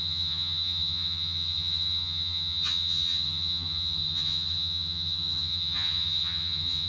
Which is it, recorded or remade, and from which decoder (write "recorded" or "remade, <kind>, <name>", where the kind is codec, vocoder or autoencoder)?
remade, vocoder, HiFi-GAN